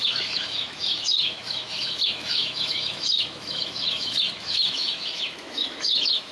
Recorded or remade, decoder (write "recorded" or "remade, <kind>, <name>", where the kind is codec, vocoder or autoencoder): remade, autoencoder, DAC-VAE